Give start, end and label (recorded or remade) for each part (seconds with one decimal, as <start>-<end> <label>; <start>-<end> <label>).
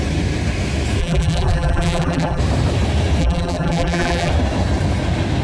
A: 0.0-1.0 recorded; 1.0-2.4 remade; 2.4-3.2 recorded; 3.2-4.3 remade; 4.3-5.4 recorded